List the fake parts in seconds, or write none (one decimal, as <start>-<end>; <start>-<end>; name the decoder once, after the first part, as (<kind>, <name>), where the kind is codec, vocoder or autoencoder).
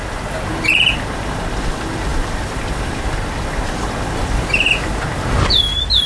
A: none